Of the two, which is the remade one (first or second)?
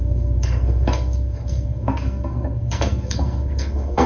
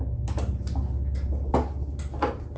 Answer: first